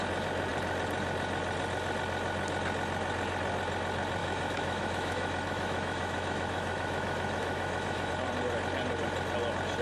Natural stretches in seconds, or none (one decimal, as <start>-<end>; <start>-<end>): 0.0-4.2; 8.1-9.8